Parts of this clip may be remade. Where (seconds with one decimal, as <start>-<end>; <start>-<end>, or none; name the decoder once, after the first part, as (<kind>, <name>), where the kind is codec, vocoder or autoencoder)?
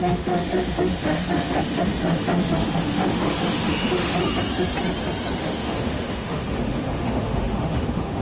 0.0-4.2 (autoencoder, DAC-VAE); 5.4-8.2